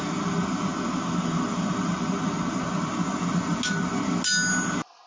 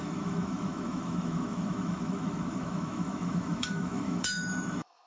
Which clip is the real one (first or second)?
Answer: first